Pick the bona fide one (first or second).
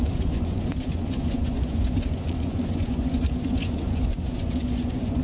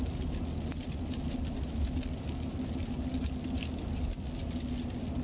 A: second